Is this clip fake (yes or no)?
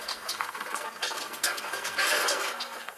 yes